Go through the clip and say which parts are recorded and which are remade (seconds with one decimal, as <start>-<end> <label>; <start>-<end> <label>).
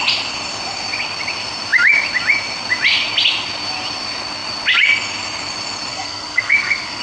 0.0-5.9 recorded; 5.9-7.0 remade